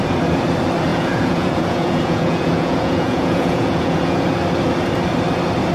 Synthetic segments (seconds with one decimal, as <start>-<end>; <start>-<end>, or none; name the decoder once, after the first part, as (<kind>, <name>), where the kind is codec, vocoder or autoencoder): 0.9-4.3 (vocoder, Vocos)

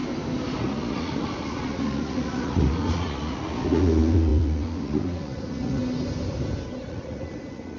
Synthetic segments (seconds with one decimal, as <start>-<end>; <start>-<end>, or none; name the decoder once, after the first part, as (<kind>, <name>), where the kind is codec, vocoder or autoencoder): 0.6-5.8 (vocoder, Vocos); 6.8-7.8